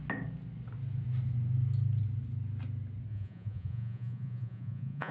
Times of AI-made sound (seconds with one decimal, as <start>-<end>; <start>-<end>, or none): 3.1-5.1